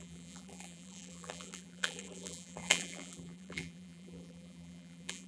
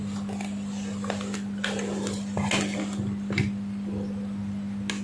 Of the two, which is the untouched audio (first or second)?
second